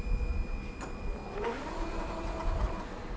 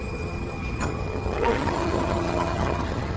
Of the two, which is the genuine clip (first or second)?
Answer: first